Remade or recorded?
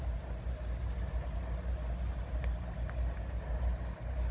recorded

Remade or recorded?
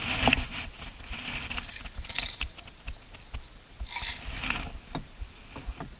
recorded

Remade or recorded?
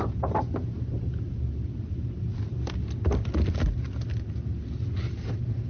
recorded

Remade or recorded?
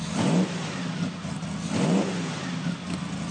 recorded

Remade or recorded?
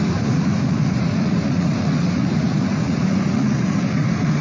remade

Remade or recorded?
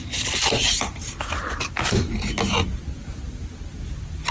recorded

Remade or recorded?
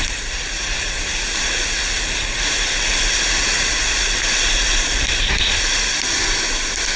recorded